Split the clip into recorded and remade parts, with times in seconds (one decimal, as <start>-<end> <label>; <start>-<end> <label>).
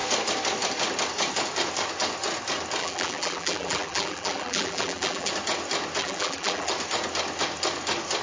0.0-2.8 recorded; 2.8-5.3 remade; 5.3-6.0 recorded; 6.0-6.7 remade; 6.7-8.2 recorded